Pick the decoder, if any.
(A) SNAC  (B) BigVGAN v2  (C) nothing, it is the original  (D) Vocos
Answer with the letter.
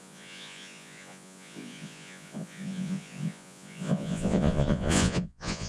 D